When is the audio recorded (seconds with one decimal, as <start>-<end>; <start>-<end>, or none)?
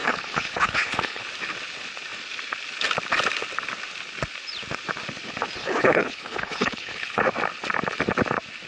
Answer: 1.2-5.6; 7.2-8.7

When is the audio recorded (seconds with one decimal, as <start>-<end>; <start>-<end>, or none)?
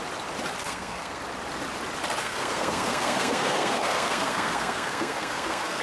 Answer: 0.0-0.6; 1.2-2.2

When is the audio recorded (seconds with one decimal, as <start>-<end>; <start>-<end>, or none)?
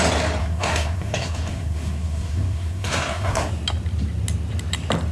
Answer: 0.0-0.4; 3.5-5.1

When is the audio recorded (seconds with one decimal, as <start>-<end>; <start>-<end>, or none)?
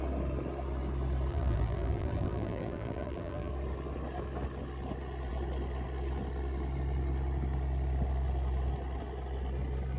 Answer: 0.0-1.3; 3.5-10.0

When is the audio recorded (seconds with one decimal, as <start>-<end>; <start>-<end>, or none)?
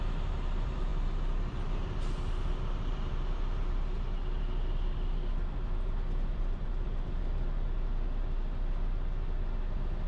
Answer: 0.0-10.1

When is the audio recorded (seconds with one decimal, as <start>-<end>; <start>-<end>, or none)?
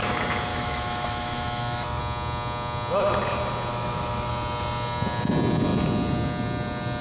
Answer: 0.0-0.5; 2.0-3.7; 4.3-7.0